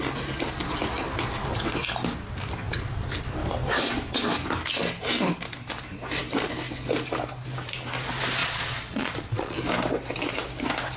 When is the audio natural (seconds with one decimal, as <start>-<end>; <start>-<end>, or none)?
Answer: 0.0-8.4; 9.6-11.0